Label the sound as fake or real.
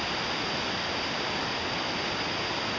real